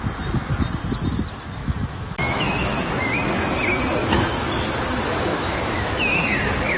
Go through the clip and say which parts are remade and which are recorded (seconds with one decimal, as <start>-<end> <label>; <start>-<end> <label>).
0.0-1.6 recorded; 1.6-2.8 remade; 2.8-4.0 recorded; 4.0-4.5 remade; 4.5-5.3 recorded; 5.3-6.2 remade; 6.2-6.8 recorded